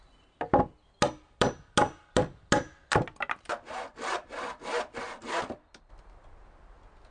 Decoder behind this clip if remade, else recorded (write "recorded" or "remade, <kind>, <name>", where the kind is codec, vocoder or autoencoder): recorded